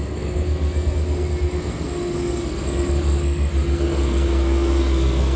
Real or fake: fake